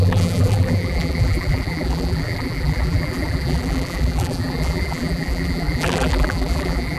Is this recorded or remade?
remade